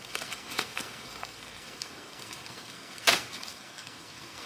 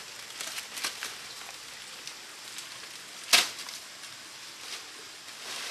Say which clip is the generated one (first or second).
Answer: first